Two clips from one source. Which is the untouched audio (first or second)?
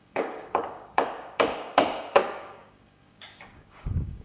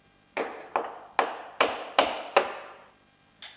second